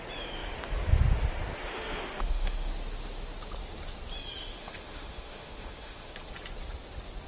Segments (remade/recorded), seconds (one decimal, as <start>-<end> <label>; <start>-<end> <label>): 0.0-1.6 recorded; 1.6-2.7 remade; 2.7-4.4 recorded; 4.4-6.1 remade; 6.1-7.3 recorded